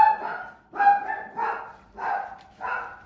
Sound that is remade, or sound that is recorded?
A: recorded